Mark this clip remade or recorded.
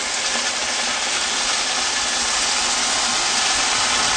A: recorded